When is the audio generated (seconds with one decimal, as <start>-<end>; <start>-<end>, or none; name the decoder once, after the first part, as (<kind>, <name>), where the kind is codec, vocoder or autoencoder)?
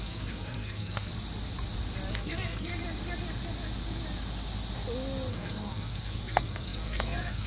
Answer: 0.0-1.1 (codec, SNAC); 2.1-2.7; 5.3-7.5